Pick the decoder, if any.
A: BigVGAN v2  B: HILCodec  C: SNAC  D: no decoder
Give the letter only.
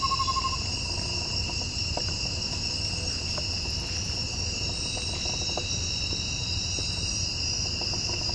D